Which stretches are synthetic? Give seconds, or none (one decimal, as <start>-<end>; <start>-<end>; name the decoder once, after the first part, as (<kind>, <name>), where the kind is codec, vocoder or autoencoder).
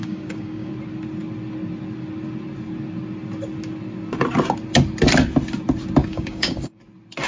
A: 0.0-0.7 (codec, DAC); 6.0-6.8